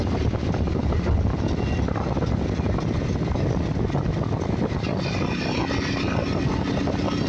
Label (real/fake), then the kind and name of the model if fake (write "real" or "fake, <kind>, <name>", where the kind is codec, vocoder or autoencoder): real